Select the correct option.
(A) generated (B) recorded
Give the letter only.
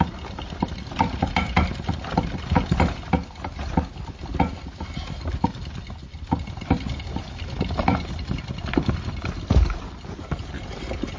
B